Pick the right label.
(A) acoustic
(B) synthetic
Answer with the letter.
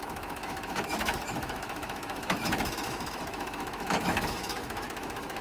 B